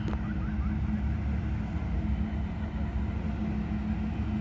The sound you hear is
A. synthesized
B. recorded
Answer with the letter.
B